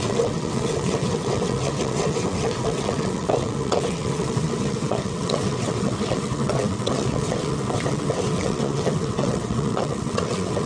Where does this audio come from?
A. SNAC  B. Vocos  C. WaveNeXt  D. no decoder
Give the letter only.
C